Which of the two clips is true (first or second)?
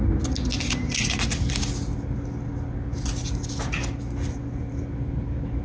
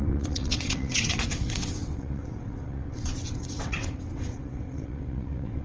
first